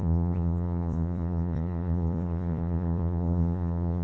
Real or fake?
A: fake